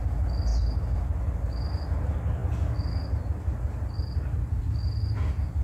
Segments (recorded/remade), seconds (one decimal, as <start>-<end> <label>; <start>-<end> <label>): 0.0-5.6 recorded